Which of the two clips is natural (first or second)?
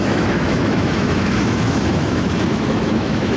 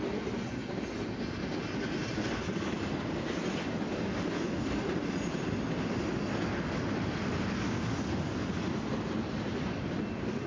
second